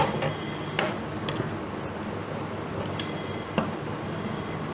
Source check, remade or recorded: recorded